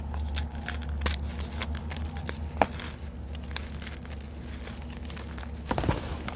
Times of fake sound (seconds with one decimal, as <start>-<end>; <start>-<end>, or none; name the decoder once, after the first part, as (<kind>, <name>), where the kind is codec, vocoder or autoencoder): none